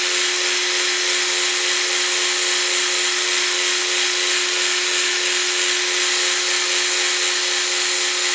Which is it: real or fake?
real